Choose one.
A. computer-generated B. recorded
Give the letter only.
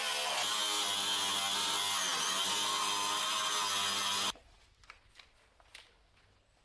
B